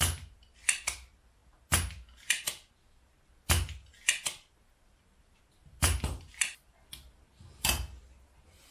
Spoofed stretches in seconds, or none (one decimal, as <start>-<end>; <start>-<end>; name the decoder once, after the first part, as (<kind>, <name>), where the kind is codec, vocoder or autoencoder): none